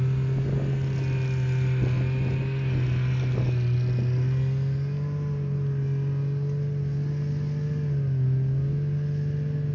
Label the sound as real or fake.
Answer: real